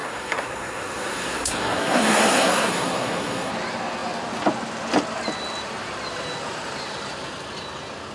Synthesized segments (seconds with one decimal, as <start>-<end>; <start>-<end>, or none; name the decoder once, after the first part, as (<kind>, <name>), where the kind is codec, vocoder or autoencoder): 0.0-3.5 (codec, SNAC)